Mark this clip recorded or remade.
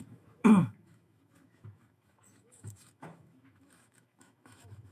remade